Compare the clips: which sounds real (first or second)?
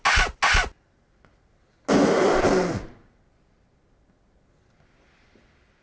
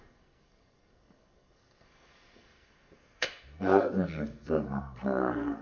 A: first